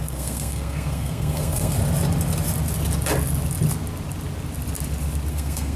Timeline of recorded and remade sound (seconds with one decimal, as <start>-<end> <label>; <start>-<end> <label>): 0.0-1.8 remade; 1.8-5.3 recorded; 5.3-5.8 remade